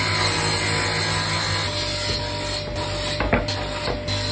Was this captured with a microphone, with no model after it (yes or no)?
yes